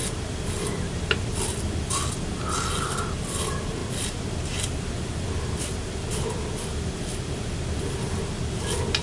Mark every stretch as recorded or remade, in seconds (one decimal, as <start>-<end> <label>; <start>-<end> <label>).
0.0-9.0 recorded